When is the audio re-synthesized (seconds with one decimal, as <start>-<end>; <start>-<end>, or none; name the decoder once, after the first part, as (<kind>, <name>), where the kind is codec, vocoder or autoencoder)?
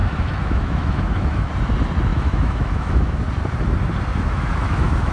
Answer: 0.0-1.5 (autoencoder, DAC-VAE); 2.1-3.2; 4.1-5.1